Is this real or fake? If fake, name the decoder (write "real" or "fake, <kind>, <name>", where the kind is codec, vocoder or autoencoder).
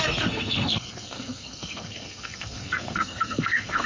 fake, codec, SNAC